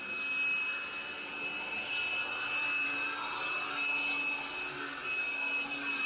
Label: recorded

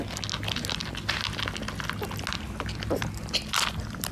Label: recorded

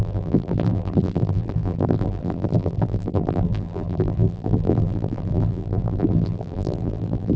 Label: remade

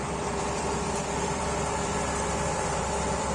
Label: remade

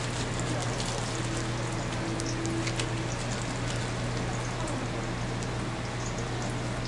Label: recorded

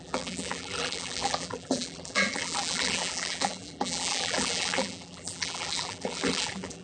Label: remade